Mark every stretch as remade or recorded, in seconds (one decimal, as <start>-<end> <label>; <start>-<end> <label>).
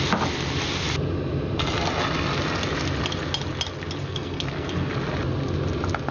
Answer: 0.0-4.0 recorded; 4.0-4.9 remade; 4.9-6.1 recorded